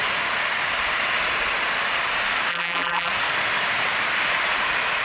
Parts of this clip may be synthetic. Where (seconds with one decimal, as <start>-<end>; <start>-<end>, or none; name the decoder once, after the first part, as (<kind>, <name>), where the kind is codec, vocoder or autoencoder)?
2.5-3.1 (vocoder, BigVGAN v2)